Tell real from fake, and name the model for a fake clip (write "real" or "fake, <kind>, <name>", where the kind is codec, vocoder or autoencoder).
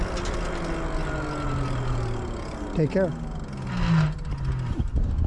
real